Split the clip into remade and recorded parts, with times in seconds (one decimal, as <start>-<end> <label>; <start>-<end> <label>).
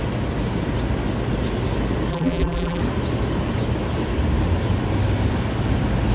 0.0-2.1 recorded; 2.1-2.8 remade; 2.8-6.1 recorded